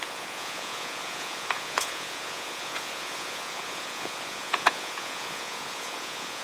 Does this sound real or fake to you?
fake